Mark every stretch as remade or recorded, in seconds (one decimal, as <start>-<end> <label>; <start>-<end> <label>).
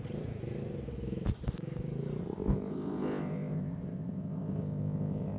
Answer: 0.0-2.2 recorded; 2.2-5.4 remade